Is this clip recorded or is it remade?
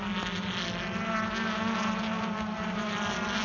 recorded